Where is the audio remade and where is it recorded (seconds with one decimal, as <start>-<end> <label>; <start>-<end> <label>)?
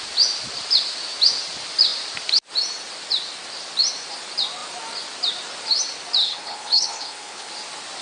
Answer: 0.0-6.2 recorded; 6.2-7.5 remade; 7.5-8.0 recorded